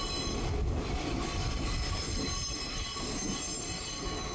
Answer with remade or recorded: recorded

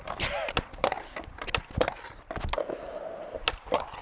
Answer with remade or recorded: recorded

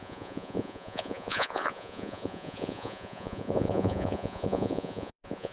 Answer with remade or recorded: remade